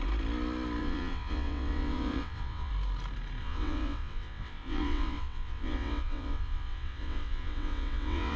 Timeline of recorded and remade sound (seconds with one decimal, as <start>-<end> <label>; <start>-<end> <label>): 0.0-0.8 recorded; 0.8-2.7 remade; 2.7-3.4 recorded; 3.4-8.4 remade

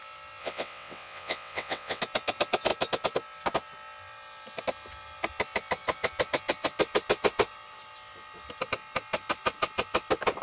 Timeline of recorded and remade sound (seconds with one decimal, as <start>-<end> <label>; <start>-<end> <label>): 0.0-0.4 recorded; 0.4-2.0 remade; 2.0-10.4 recorded

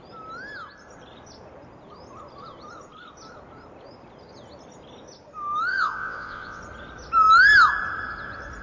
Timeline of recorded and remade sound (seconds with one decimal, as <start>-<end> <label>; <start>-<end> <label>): 0.0-5.7 recorded; 5.7-6.6 remade; 6.6-8.6 recorded

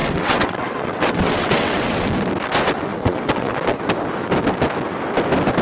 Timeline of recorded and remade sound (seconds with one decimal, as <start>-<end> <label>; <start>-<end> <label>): 0.0-2.1 remade; 2.1-2.9 recorded; 2.9-3.8 remade; 3.8-5.6 recorded

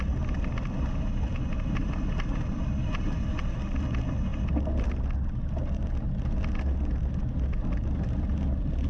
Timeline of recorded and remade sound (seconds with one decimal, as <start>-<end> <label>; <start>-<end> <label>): 0.0-8.9 recorded

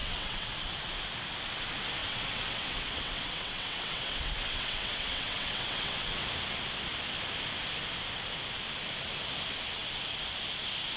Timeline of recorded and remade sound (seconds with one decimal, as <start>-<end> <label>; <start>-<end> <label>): 0.0-0.5 remade; 0.5-2.0 recorded; 2.0-6.2 remade; 6.2-11.0 recorded

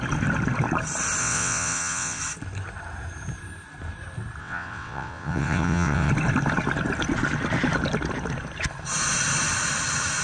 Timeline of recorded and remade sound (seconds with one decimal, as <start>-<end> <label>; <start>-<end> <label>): 0.0-1.2 recorded; 1.2-2.2 remade; 2.2-4.4 recorded; 4.4-6.1 remade; 6.1-10.2 recorded